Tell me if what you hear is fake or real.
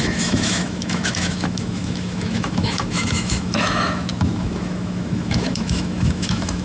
fake